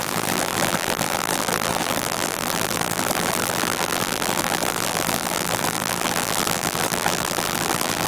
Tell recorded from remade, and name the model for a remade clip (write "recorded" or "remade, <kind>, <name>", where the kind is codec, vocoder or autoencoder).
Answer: remade, vocoder, BigVGAN v2